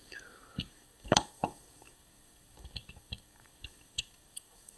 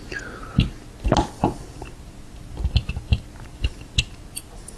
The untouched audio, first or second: second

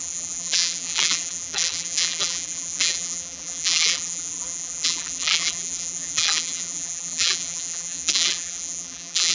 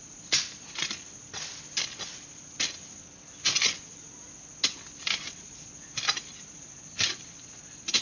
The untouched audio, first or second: second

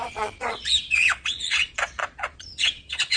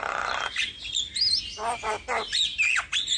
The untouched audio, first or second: second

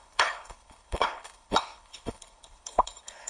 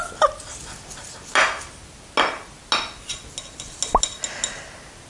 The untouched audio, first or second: second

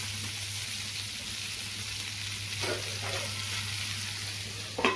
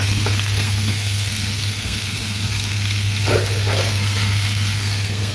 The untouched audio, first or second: first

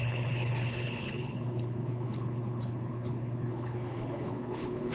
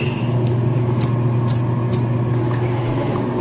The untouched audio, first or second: second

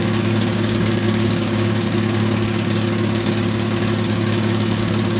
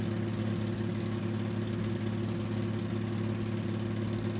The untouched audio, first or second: second